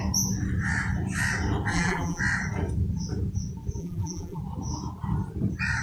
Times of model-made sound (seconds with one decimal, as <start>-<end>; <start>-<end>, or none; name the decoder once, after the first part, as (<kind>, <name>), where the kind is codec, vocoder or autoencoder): 1.7-2.2 (vocoder, BigVGAN v2); 3.8-4.4